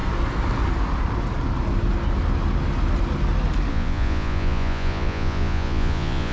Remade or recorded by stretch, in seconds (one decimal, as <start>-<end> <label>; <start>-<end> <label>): 0.0-3.7 recorded; 3.7-6.3 remade